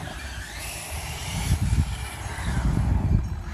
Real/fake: fake